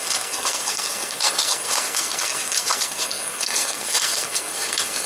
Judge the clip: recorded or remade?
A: remade